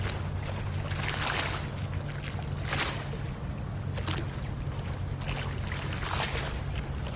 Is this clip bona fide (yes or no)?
yes